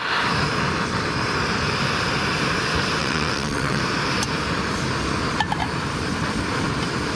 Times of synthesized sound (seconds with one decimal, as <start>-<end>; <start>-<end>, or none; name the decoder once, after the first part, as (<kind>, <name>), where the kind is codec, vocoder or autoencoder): 3.0-3.8 (vocoder, WaveNeXt)